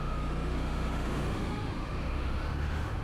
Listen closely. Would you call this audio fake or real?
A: fake